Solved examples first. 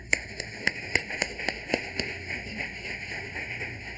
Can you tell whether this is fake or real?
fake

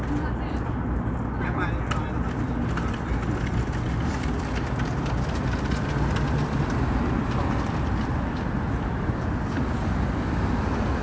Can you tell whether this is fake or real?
real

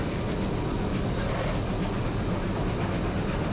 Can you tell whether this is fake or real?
real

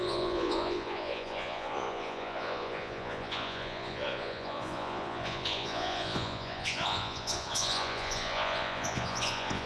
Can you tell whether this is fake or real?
fake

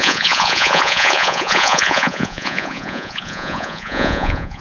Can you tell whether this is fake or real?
fake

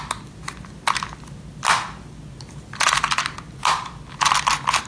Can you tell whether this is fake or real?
real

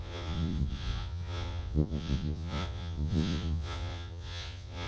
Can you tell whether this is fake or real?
fake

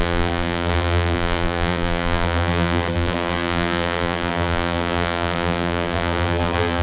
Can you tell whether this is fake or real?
fake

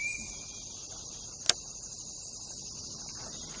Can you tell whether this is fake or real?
real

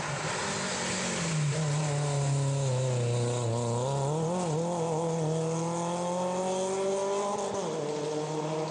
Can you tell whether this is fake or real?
real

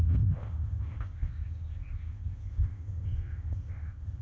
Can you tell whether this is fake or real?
fake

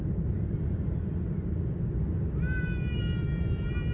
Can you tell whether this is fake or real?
real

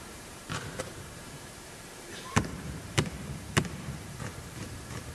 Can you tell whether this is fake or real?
fake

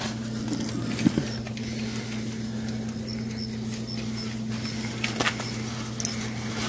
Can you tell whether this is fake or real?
real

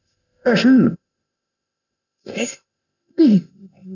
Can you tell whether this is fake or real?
fake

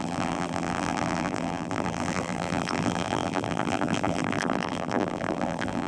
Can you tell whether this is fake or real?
fake